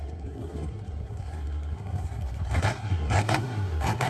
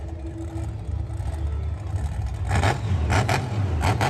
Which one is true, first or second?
second